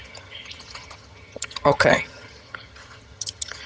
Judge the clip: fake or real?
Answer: fake